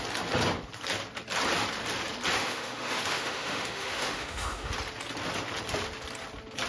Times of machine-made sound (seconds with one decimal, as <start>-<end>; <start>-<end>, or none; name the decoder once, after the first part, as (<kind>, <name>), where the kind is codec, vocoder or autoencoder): 2.4-4.7 (autoencoder, DAC-VAE)